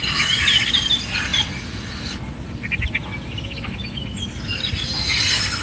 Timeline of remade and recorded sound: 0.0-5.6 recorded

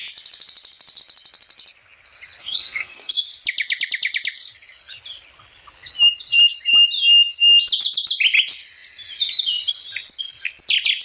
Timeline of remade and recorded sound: 0.0-2.4 recorded; 2.4-3.2 remade; 3.2-11.0 recorded